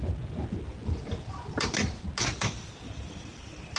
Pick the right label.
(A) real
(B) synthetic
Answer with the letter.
A